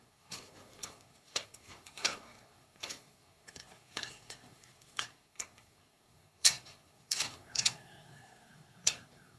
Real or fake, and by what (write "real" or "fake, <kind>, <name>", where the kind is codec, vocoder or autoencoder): fake, codec, SNAC